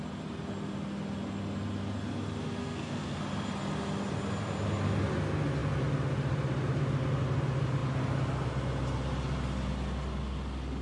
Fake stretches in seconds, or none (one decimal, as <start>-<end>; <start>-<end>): 2.6-3.2